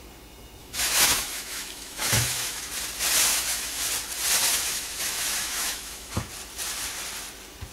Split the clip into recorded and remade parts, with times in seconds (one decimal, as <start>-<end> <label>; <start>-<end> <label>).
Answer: 0.0-0.6 recorded; 0.6-2.7 remade; 2.7-3.3 recorded; 3.3-3.8 remade; 3.8-4.5 recorded; 4.5-6.3 remade; 6.3-7.7 recorded